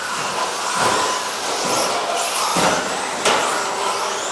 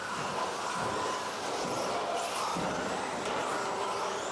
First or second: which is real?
first